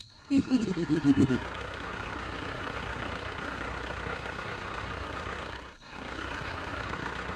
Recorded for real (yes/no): no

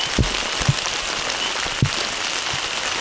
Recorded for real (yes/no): yes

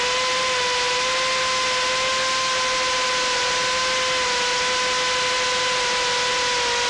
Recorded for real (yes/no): yes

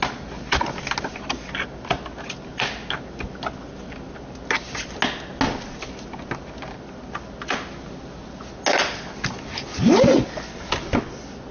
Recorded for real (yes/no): yes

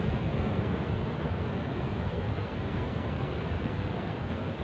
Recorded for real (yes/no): no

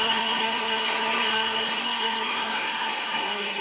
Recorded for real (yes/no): no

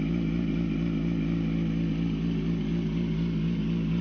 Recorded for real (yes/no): yes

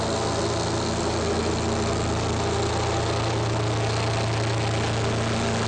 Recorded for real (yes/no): yes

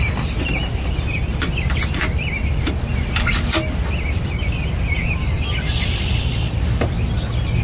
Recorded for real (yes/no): no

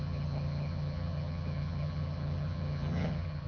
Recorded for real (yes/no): no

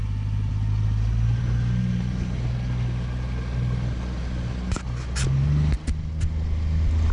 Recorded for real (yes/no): yes